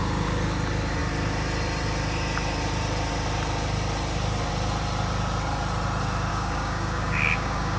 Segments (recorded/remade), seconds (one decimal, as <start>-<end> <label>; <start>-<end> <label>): 0.0-6.3 recorded; 6.3-7.8 remade

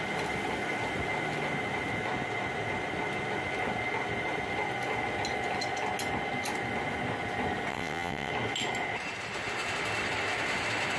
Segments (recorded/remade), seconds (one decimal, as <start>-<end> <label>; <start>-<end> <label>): 0.0-7.7 recorded; 7.7-8.3 remade; 8.3-11.0 recorded

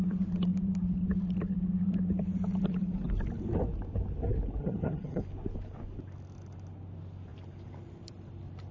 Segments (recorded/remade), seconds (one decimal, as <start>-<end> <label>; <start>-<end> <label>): 0.0-4.6 recorded; 4.6-5.2 remade; 5.2-8.7 recorded

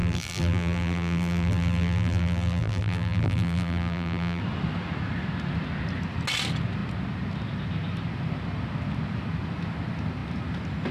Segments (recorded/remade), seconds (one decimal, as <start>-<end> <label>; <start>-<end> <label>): 0.0-4.4 remade; 4.4-10.9 recorded

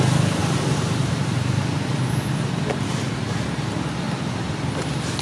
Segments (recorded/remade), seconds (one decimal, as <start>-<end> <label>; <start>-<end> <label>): 0.0-0.4 recorded; 0.4-1.6 remade; 1.6-5.2 recorded